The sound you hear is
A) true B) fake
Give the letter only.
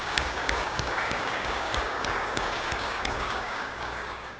B